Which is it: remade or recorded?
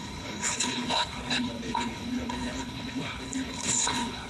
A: remade